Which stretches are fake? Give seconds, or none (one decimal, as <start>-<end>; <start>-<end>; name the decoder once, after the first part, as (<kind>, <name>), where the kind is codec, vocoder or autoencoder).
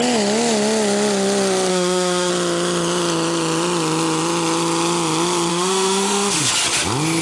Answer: 1.7-2.3 (autoencoder, DAC-VAE); 5.5-6.5